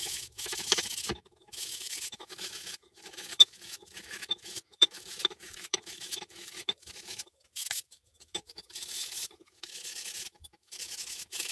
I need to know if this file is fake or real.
fake